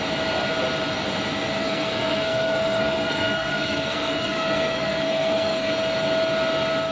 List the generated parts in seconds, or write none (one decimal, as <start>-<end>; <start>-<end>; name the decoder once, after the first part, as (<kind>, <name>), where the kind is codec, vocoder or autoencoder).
1.6-5.7 (codec, SNAC)